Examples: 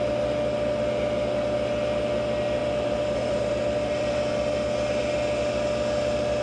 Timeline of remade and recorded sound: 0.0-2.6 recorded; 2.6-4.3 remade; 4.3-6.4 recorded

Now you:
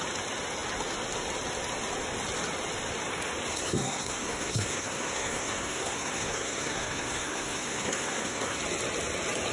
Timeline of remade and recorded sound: 0.0-3.5 recorded; 3.5-8.6 remade; 8.6-9.5 recorded

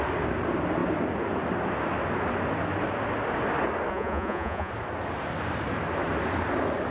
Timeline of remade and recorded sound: 0.0-3.9 recorded; 3.9-4.7 remade; 4.7-6.9 recorded

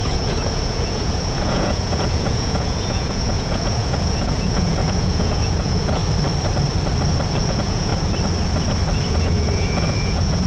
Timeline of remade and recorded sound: 0.0-6.0 remade; 6.0-7.4 recorded; 7.4-7.9 remade; 7.9-9.1 recorded; 9.1-10.5 remade

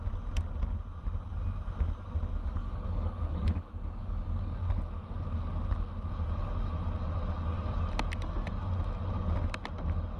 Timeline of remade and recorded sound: 0.0-2.4 recorded; 2.4-4.7 remade; 4.7-10.2 recorded

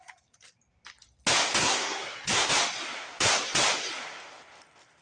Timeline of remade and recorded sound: 0.0-1.6 recorded; 1.6-2.5 remade; 2.5-5.0 recorded

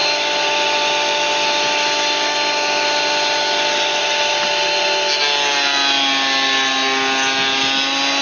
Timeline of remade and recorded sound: 0.0-8.2 recorded

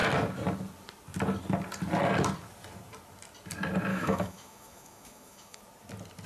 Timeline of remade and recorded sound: 0.0-3.9 recorded; 3.9-5.6 remade; 5.6-6.3 recorded